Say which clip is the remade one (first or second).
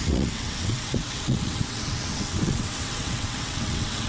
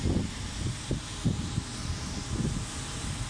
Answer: first